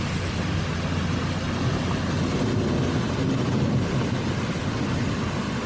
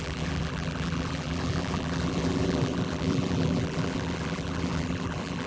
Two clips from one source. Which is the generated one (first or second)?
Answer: second